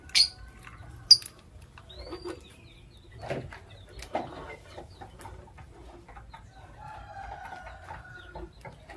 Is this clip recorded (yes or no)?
yes